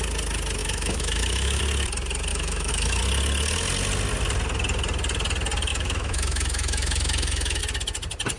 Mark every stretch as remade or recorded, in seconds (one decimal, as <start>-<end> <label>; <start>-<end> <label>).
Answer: 0.0-0.6 recorded; 0.6-1.6 remade; 1.6-2.3 recorded; 2.3-3.0 remade; 3.0-5.7 recorded; 5.7-7.6 remade; 7.6-8.4 recorded